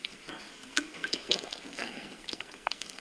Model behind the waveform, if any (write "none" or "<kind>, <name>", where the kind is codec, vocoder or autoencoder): codec, SNAC